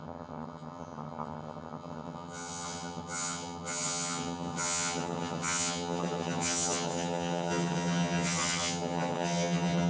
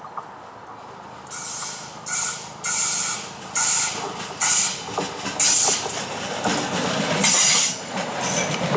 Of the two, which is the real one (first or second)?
second